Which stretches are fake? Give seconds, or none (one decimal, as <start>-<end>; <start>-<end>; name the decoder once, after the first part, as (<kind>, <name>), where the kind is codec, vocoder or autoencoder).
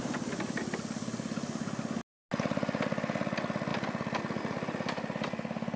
none